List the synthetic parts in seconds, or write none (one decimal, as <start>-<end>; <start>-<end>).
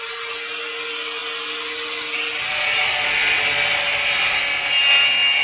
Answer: none